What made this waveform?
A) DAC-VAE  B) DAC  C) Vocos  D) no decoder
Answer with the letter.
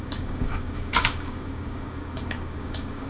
B